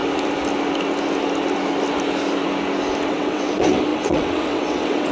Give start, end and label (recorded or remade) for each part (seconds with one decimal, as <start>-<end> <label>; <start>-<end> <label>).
0.0-3.1 recorded; 3.1-5.1 remade